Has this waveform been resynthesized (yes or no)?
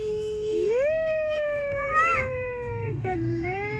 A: yes